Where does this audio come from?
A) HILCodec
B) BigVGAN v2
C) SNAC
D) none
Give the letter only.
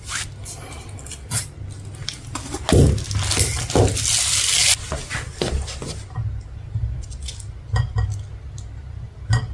D